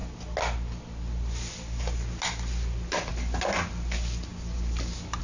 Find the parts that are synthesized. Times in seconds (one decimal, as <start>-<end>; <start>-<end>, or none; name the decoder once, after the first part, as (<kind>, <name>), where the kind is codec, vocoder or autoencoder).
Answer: none